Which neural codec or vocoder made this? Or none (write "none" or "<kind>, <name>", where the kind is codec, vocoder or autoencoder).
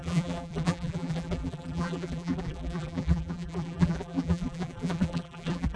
vocoder, BigVGAN v2